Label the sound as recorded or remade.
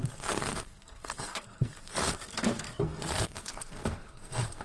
remade